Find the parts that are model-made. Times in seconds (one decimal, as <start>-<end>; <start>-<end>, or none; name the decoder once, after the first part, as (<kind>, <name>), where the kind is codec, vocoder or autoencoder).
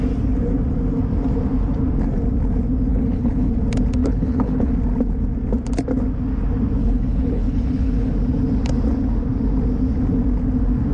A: 2.9-3.5 (codec, HILCodec); 4.0-4.7; 6.8-8.1